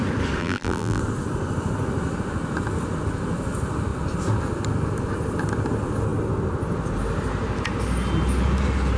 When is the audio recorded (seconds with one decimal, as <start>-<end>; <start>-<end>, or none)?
0.0-0.4; 1.0-9.0